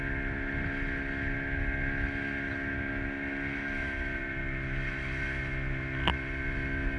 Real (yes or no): yes